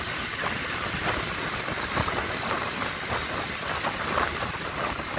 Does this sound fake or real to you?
real